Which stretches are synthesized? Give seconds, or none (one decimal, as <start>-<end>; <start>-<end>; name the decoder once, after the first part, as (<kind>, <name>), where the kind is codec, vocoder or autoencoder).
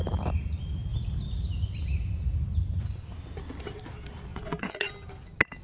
4.3-4.9 (vocoder, Vocos)